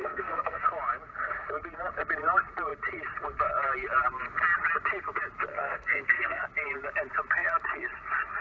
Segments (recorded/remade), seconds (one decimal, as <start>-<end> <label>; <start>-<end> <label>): 0.0-0.6 remade; 0.6-5.5 recorded; 5.5-6.4 remade; 6.4-8.4 recorded